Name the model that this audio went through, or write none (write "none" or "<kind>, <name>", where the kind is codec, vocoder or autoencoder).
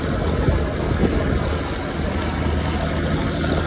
none